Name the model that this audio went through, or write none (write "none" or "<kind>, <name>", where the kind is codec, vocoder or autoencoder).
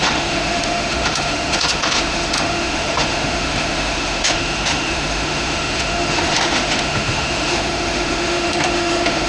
autoencoder, DAC-VAE